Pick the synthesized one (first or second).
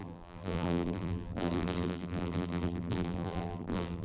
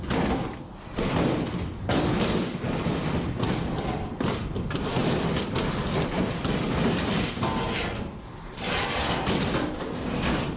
first